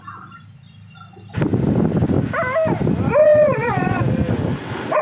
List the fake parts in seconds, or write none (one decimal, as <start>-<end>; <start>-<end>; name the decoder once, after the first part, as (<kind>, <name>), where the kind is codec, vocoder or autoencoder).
3.2-4.0 (vocoder, WaveNeXt)